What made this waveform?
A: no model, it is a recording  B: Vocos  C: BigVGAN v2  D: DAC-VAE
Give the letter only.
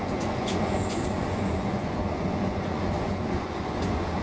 B